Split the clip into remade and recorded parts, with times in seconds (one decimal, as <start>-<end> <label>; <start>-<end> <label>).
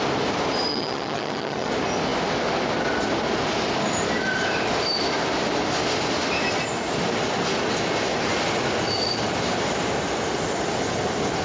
0.0-0.7 recorded; 0.7-1.7 remade; 1.7-11.4 recorded